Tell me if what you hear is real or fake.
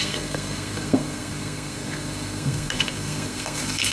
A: fake